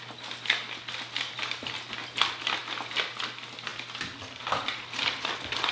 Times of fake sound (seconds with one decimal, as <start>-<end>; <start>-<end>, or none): none